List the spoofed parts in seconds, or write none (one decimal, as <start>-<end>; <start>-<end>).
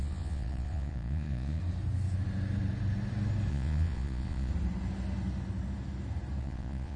0.0-1.6; 3.5-4.5; 6.4-7.0